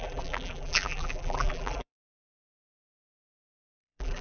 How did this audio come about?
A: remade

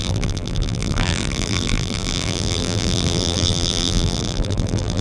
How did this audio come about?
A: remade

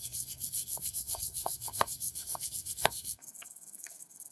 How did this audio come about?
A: remade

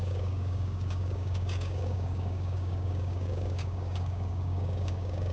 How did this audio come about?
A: remade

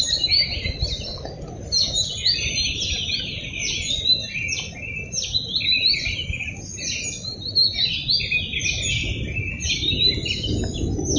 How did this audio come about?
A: recorded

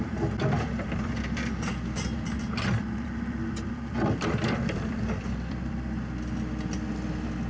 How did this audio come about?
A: remade